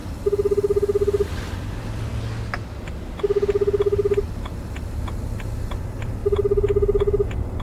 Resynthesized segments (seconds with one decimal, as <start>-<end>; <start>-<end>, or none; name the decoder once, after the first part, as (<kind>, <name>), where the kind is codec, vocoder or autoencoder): 1.5-2.1 (vocoder, BigVGAN v2); 5.7-6.2